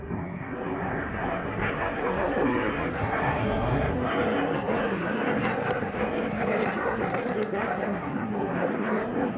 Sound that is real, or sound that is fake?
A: fake